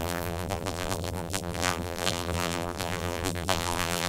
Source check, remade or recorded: remade